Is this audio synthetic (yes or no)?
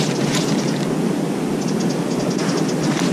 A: no